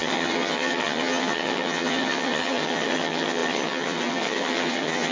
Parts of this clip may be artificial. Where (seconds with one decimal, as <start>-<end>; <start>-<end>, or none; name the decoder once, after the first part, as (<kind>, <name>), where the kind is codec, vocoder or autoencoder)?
0.0-5.1 (vocoder, HiFi-GAN)